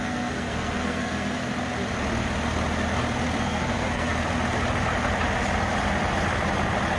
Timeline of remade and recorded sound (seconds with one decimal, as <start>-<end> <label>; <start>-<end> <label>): 0.0-1.4 remade; 1.4-3.4 recorded; 3.4-4.1 remade; 4.1-7.0 recorded